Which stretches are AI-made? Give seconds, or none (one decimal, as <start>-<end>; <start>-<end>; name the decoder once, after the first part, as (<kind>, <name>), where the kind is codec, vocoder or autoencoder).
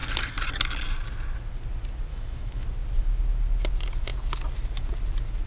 2.1-2.6 (autoencoder, DAC-VAE)